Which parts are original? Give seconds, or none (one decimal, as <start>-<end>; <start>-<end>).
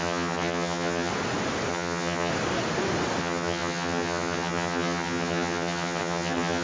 1.1-1.7; 2.3-3.2